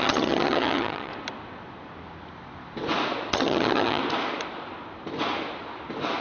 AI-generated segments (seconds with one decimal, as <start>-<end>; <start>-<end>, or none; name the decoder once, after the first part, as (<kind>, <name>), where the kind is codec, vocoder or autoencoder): 0.0-1.1 (vocoder, HiFi-GAN); 3.3-4.0